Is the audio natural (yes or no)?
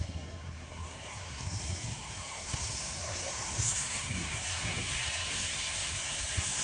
no